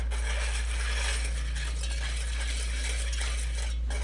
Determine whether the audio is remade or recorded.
recorded